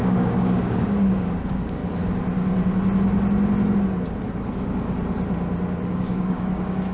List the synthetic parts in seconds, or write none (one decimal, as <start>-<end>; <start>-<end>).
0.0-1.8; 5.9-6.9

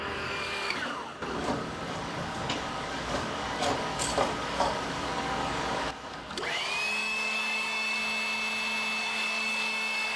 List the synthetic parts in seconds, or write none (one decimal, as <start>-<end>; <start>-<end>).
0.0-8.0; 9.0-10.2

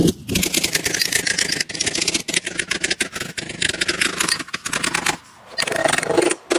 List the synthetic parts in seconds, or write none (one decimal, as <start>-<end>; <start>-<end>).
5.8-6.6

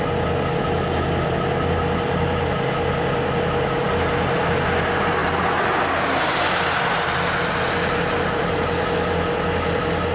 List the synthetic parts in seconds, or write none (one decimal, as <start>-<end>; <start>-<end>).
none